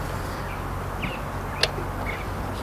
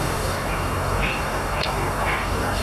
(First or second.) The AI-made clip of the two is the second